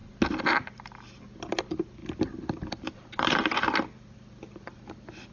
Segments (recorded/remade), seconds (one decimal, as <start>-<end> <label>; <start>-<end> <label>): 0.0-2.0 recorded; 2.0-5.3 remade